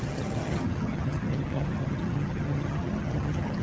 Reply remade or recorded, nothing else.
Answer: remade